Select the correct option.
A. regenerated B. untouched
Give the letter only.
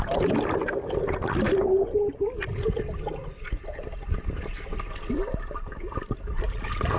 B